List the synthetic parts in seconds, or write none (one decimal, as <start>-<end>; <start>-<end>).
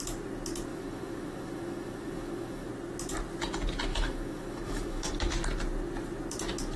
0.7-2.7; 3.9-5.1